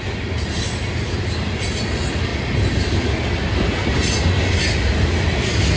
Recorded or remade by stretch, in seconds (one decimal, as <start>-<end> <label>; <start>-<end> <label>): 0.0-5.8 recorded